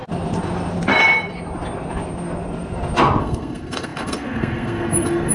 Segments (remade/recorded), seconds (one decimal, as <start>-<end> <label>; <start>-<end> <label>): 0.0-3.2 recorded; 3.2-5.3 remade